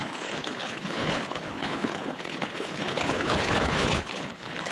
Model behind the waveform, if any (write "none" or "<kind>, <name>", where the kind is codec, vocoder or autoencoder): codec, HILCodec